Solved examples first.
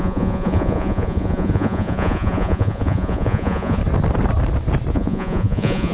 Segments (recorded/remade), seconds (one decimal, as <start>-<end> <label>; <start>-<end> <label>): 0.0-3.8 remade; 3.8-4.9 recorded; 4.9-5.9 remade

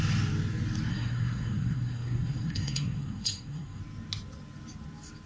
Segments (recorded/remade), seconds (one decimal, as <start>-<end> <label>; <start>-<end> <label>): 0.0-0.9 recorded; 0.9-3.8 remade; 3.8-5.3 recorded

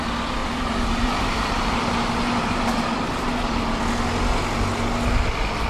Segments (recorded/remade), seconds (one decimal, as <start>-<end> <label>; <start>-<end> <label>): 0.0-0.4 recorded; 0.4-3.8 remade; 3.8-5.7 recorded

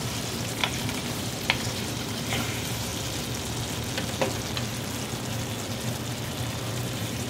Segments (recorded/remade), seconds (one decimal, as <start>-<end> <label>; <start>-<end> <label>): 0.0-2.9 remade; 2.9-6.8 recorded; 6.8-7.3 remade

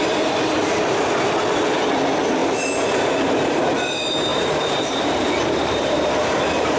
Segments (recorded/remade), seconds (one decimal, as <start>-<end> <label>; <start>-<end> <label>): 0.0-4.3 recorded; 4.3-6.1 remade; 6.1-6.8 recorded

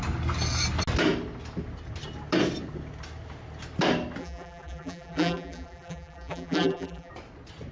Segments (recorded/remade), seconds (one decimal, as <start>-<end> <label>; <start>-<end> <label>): 0.0-4.2 recorded; 4.2-7.1 remade; 7.1-7.7 recorded

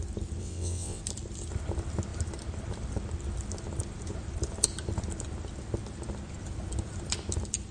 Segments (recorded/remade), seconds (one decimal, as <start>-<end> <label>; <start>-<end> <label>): 0.0-0.4 recorded; 0.4-1.0 remade; 1.0-7.7 recorded